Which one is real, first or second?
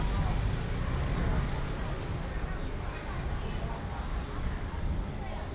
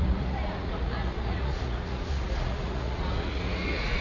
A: first